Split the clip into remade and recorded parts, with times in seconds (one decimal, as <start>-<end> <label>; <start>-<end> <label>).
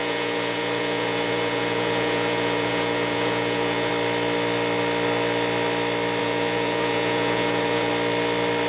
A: 0.0-3.9 remade; 3.9-6.2 recorded; 6.2-7.9 remade; 7.9-8.7 recorded